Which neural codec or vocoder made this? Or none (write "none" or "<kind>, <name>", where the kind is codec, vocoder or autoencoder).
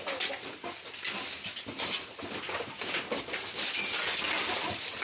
none